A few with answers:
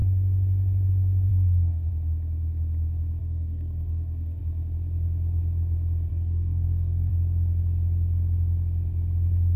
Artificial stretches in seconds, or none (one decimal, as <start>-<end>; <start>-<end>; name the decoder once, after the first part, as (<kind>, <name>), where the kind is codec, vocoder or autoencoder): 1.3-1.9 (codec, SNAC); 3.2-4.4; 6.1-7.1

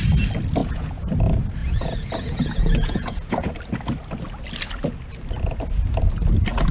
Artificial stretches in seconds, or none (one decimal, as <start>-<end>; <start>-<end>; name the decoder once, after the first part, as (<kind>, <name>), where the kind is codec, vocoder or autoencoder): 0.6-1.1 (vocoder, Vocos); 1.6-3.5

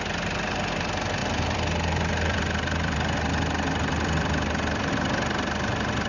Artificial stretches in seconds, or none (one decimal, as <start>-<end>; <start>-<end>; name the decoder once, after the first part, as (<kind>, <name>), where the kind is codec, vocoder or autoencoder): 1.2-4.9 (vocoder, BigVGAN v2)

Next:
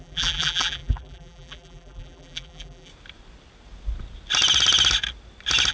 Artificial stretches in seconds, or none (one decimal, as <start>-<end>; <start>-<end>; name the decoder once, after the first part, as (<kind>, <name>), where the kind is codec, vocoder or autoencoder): 0.0-2.9 (vocoder, BigVGAN v2)